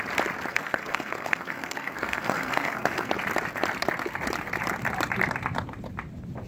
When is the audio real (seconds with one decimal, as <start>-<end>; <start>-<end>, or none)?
0.0-0.5; 3.1-6.5